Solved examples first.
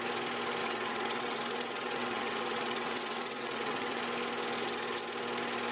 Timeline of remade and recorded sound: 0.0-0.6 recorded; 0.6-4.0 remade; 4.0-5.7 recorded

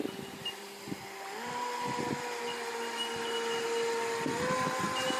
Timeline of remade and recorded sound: 0.0-5.2 recorded

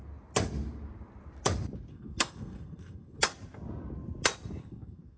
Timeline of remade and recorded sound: 0.0-1.9 recorded; 1.9-3.2 remade; 3.2-4.6 recorded; 4.6-5.2 remade

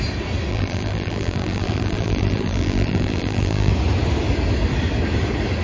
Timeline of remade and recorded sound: 0.0-0.5 recorded; 0.5-3.7 remade; 3.7-5.6 recorded

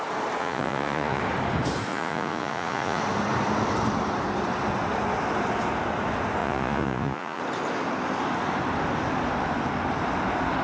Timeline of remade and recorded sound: 0.0-0.4 recorded; 0.4-1.2 remade; 1.2-1.9 recorded; 1.9-3.0 remade; 3.0-6.4 recorded; 6.4-7.4 remade; 7.4-10.6 recorded

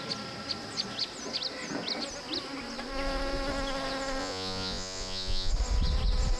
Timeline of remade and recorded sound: 0.0-4.2 recorded; 4.2-5.5 remade; 5.5-6.4 recorded